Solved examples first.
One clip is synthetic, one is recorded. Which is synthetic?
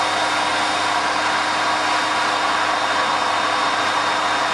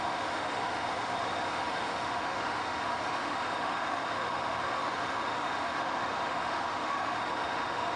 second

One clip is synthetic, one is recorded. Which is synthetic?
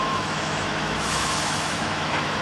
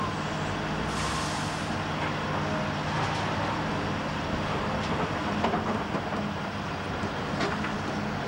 first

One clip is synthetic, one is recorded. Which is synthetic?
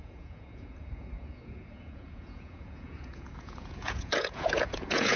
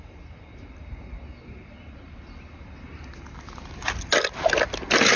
first